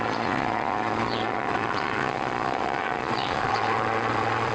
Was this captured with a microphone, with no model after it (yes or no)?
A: no